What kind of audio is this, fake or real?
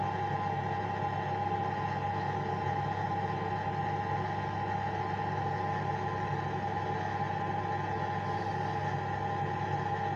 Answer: real